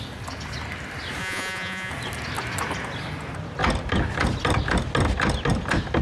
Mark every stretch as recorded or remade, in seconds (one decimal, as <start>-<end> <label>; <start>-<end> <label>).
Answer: 0.0-1.2 recorded; 1.2-1.9 remade; 1.9-6.0 recorded